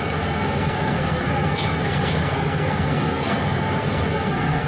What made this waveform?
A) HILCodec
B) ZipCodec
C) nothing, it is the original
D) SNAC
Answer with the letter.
D